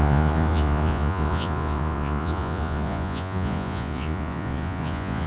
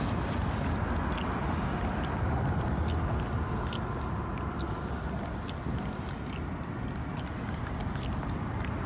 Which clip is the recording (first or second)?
second